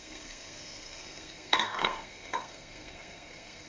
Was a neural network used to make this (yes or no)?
yes